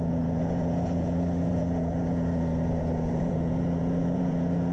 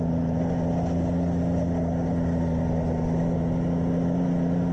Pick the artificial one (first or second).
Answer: first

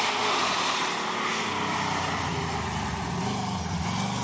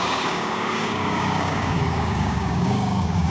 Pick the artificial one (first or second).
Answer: second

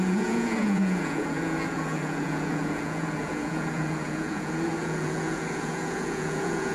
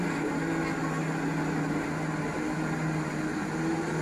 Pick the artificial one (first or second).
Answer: first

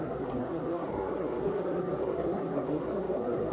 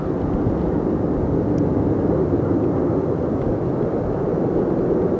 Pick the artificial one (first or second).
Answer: first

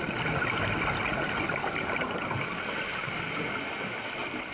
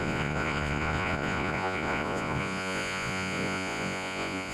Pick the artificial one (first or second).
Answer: second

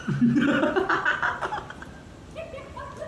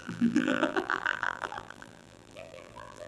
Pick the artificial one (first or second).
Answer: second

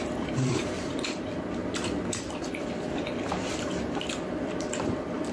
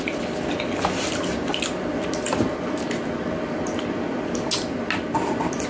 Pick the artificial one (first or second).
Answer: first